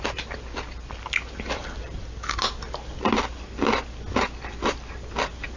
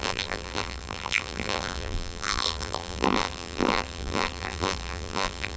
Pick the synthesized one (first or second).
second